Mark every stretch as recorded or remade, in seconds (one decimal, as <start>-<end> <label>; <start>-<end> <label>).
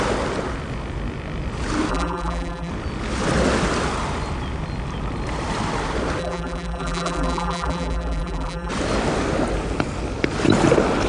0.0-1.9 recorded; 1.9-2.7 remade; 2.7-6.2 recorded; 6.2-8.7 remade; 8.7-11.1 recorded